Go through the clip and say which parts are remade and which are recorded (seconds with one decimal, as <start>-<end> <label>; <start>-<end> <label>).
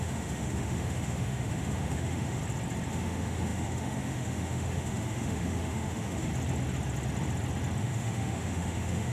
0.0-2.4 remade; 2.4-2.9 recorded; 2.9-6.3 remade; 6.3-7.8 recorded; 7.8-9.1 remade